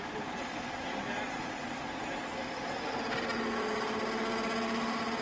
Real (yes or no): yes